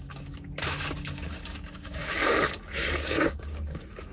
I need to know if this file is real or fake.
fake